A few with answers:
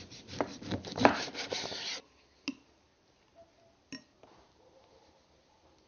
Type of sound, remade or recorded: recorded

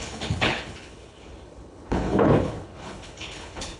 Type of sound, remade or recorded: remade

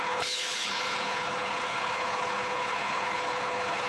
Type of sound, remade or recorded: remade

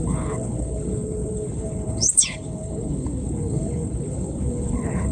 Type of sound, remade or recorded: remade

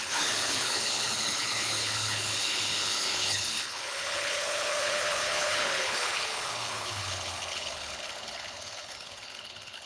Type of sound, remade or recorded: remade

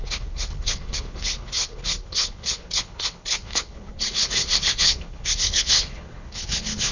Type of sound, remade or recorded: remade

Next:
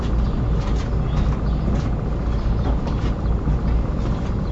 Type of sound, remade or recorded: recorded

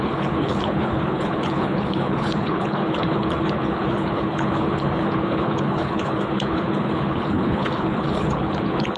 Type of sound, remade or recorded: remade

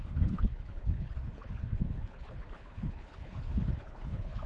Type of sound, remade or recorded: remade